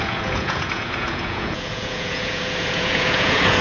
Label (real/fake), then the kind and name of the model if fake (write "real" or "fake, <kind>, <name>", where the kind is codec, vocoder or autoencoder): fake, vocoder, Vocos